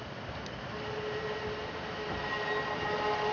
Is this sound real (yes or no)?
yes